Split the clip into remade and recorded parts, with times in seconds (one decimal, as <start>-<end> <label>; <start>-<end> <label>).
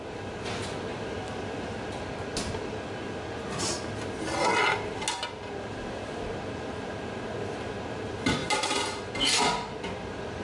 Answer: 0.0-10.4 recorded